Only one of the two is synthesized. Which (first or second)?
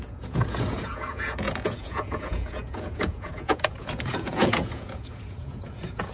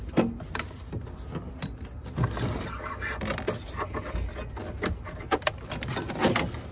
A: first